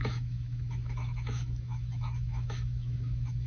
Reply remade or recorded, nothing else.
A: remade